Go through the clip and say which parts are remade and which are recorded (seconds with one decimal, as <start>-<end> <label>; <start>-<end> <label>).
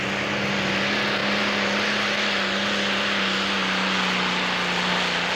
0.0-5.4 recorded